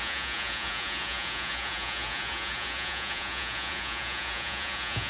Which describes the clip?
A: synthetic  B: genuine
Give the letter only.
A